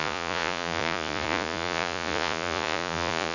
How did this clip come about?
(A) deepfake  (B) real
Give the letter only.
A